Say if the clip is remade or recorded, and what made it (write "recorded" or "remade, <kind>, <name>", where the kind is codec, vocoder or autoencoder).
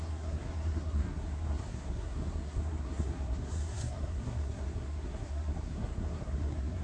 remade, codec, SNAC